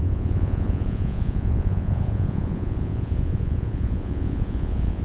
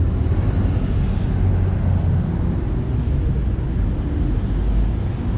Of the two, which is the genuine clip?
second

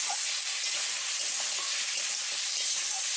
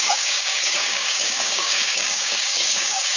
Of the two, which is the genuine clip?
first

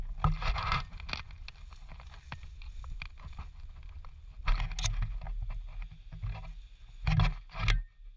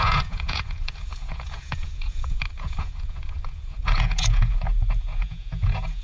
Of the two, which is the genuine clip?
first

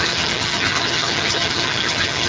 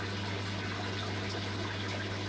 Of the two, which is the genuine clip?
second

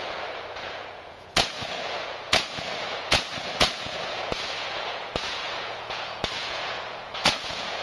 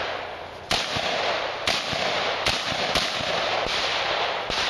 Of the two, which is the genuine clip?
second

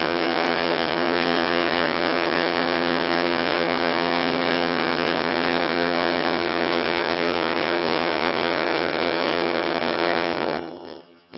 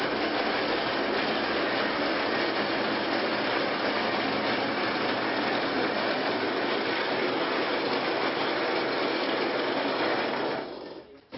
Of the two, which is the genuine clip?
second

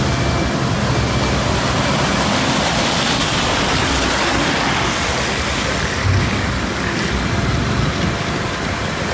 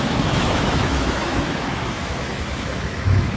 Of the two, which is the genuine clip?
first